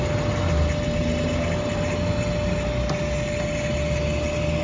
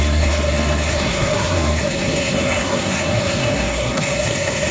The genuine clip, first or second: first